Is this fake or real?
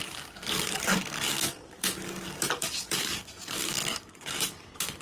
fake